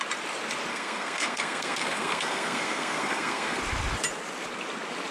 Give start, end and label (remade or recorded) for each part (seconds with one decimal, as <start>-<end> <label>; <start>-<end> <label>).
0.0-0.7 recorded; 0.7-3.6 remade; 3.6-5.1 recorded